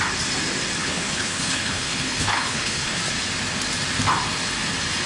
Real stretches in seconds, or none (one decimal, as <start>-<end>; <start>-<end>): 0.0-0.8; 3.0-5.1